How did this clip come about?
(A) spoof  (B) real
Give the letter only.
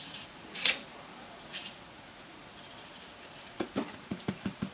A